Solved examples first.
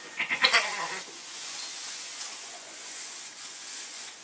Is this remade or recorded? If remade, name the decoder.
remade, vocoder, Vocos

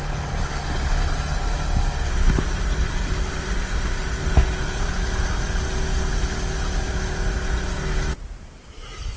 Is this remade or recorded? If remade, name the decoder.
recorded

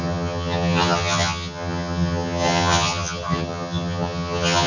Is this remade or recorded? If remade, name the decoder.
remade, vocoder, HiFi-GAN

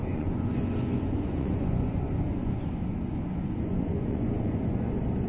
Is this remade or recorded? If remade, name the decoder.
remade, vocoder, Vocos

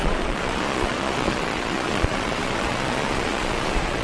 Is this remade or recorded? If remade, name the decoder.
remade, vocoder, Vocos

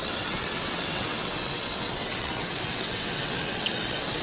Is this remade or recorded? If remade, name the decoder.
remade, vocoder, WaveNeXt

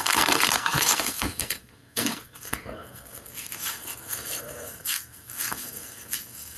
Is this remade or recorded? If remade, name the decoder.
remade, codec, SNAC